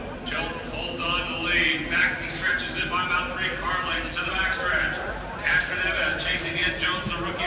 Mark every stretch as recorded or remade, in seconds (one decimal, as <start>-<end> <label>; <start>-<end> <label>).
0.0-7.5 recorded